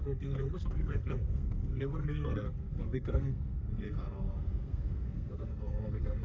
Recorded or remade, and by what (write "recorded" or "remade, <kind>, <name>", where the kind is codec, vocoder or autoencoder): remade, codec, SNAC